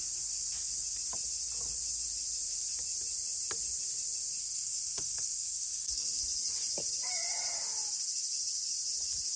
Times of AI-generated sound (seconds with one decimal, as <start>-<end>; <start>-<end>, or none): 4.4-6.2